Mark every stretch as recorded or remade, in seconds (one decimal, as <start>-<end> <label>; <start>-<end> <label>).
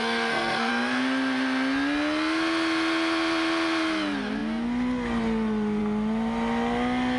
0.0-0.7 remade; 0.7-7.2 recorded